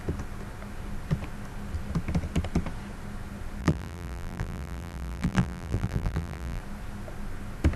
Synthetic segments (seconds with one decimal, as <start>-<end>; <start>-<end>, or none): 3.6-6.6